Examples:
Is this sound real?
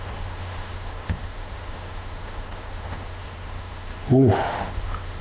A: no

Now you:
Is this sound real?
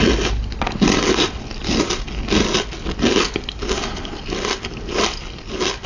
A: yes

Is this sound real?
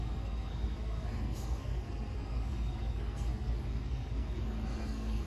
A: no